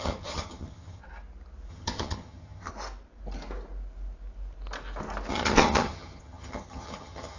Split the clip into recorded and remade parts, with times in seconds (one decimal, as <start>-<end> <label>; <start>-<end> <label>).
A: 0.0-1.0 remade; 1.0-1.7 recorded; 1.7-2.7 remade; 2.7-5.3 recorded; 5.3-7.4 remade